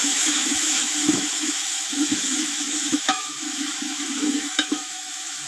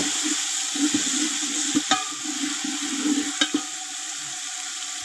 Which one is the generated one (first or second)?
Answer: first